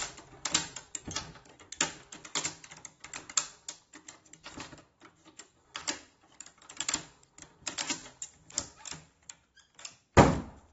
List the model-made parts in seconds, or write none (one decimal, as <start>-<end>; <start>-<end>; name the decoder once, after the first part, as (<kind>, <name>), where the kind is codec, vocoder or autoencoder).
3.8-5.8 (vocoder, BigVGAN v2); 6.4-10.7